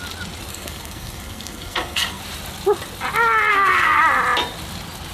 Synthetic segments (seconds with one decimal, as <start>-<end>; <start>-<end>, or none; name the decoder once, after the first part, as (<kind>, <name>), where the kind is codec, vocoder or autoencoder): 0.5-2.2 (codec, SNAC); 3.5-4.0